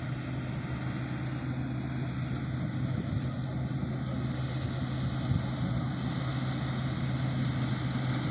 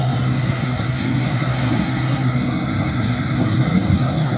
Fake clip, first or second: second